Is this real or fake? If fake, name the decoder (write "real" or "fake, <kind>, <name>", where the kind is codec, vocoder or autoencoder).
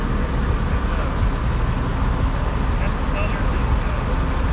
real